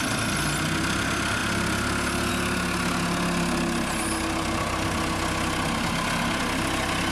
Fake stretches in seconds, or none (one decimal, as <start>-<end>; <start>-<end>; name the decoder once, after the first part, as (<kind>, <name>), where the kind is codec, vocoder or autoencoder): none